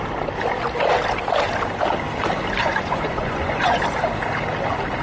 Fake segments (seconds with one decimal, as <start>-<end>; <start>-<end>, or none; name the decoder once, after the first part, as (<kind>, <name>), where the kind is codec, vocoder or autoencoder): 2.6-3.8 (vocoder, Vocos)